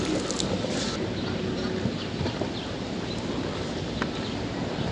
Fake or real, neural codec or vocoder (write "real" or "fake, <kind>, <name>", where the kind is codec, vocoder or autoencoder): real